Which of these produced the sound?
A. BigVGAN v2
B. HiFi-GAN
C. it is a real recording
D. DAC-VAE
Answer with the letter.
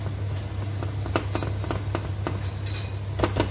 C